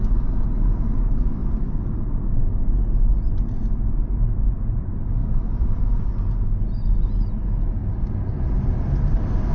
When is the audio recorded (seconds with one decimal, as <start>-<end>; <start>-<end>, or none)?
0.0-1.4; 3.1-5.2; 6.1-7.8; 9.1-9.5